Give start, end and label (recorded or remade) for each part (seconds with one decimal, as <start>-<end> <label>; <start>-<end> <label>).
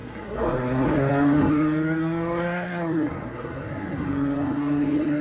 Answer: 0.0-5.2 remade